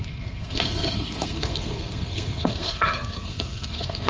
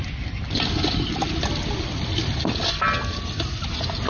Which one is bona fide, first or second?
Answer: second